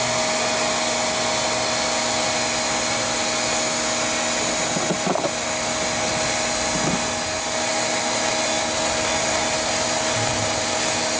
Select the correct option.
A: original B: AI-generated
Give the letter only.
A